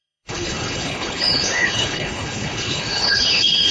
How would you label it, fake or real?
fake